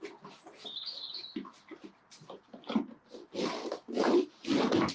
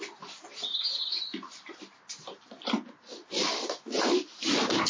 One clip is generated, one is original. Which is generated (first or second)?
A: second